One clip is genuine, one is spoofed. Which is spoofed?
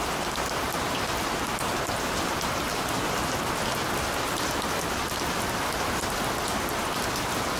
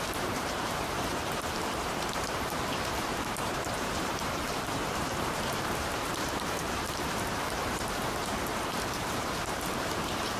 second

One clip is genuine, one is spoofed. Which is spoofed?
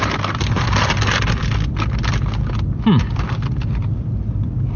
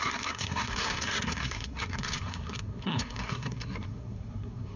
second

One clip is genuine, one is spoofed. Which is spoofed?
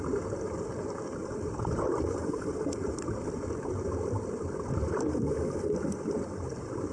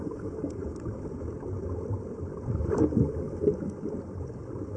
first